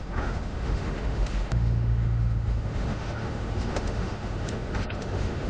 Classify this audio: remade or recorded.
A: remade